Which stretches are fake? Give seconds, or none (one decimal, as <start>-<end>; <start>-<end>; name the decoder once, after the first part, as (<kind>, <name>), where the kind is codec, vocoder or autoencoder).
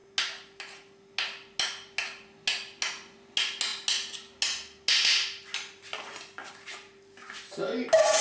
none